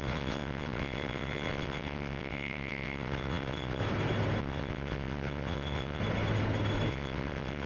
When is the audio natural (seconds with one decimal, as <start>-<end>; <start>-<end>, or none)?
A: 3.8-4.4; 6.0-6.9